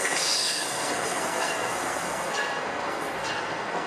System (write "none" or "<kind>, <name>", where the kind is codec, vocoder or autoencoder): codec, SNAC